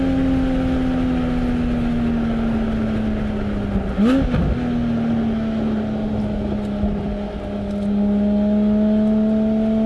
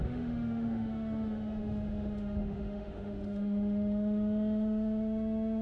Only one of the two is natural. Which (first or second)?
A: first